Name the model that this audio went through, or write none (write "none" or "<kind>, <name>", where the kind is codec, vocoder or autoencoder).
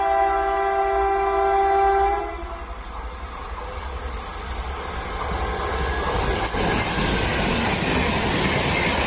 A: none